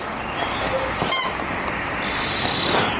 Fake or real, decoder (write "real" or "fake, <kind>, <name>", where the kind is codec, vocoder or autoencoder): real